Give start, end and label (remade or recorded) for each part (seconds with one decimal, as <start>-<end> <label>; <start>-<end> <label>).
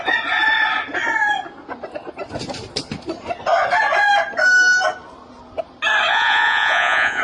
0.0-6.1 recorded; 6.1-7.2 remade